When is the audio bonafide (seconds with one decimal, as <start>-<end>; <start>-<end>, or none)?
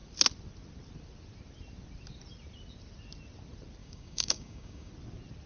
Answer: 0.0-3.8; 4.9-5.5